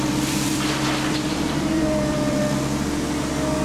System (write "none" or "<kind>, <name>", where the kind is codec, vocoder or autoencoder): vocoder, BigVGAN v2